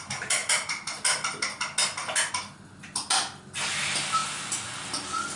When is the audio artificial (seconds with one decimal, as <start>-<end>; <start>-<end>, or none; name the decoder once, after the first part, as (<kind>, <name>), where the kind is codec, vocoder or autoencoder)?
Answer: none